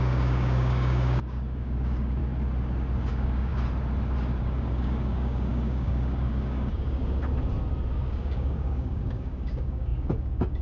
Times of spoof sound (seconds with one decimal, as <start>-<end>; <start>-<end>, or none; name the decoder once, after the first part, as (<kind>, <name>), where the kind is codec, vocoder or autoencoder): 0.0-2.2 (codec, DAC); 3.1-3.5; 4.4-7.0; 7.9-10.6